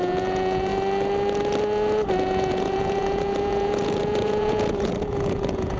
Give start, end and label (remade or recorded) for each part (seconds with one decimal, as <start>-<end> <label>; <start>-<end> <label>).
0.0-0.7 remade; 0.7-2.5 recorded; 2.5-5.8 remade

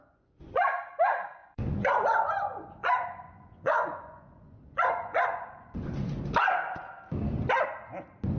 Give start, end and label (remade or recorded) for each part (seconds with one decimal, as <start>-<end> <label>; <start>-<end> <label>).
0.0-0.9 remade; 0.9-1.4 recorded; 1.4-6.2 remade; 6.2-8.4 recorded

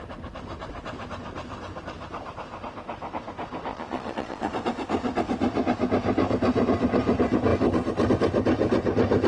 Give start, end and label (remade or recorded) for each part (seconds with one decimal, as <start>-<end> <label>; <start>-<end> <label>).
0.0-3.7 recorded; 3.7-4.5 remade; 4.5-9.3 recorded

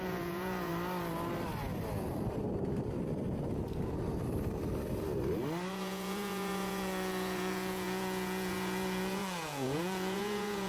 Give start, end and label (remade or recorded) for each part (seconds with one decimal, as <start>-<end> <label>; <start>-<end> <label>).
0.0-0.7 remade; 0.7-5.7 recorded; 5.7-10.7 remade